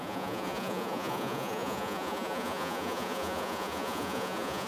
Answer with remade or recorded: remade